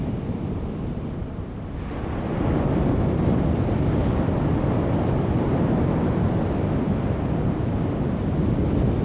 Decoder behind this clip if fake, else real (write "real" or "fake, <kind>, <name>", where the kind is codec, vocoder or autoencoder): real